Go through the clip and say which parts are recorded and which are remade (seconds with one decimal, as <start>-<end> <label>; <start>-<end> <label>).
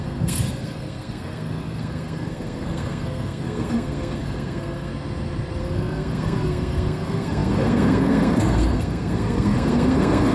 0.0-4.9 remade; 4.9-5.6 recorded; 5.6-10.3 remade